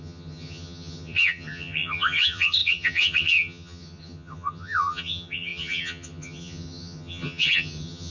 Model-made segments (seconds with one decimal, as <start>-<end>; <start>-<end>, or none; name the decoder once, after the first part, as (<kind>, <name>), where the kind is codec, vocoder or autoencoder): 0.0-8.1 (vocoder, HiFi-GAN)